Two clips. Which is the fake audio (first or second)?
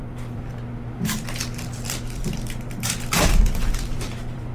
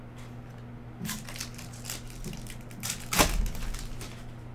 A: first